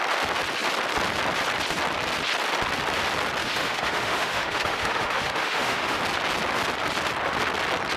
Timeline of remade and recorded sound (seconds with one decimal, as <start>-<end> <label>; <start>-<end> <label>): 0.0-3.4 recorded; 3.4-6.0 remade; 6.0-8.0 recorded